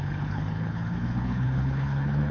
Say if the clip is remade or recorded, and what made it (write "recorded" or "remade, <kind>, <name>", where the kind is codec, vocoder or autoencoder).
remade, codec, HILCodec